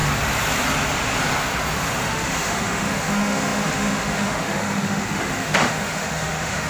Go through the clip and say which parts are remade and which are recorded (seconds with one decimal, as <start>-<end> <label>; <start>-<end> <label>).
0.0-1.9 recorded; 1.9-6.7 remade